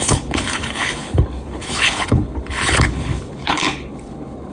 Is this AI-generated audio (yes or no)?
yes